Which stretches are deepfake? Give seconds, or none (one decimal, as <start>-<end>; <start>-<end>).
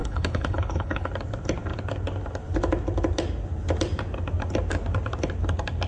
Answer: 0.0-1.1